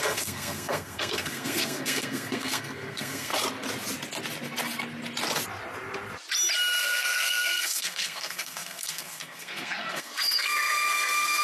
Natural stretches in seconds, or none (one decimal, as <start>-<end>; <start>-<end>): 3.3-6.8